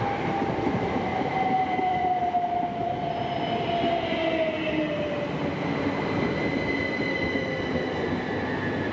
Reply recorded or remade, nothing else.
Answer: recorded